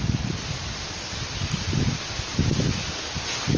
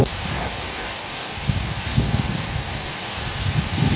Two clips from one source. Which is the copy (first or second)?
second